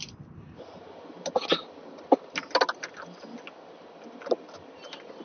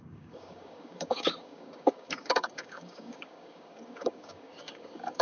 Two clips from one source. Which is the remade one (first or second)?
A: second